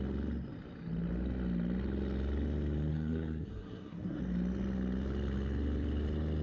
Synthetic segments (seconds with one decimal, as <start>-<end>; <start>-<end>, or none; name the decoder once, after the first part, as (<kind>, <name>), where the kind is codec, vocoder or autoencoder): 2.9-4.2 (codec, SNAC)